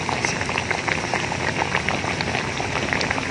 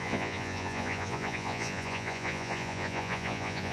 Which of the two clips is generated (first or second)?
second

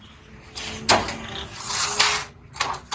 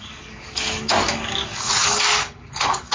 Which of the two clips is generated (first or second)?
second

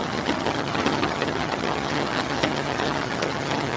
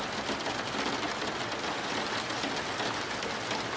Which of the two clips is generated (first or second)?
first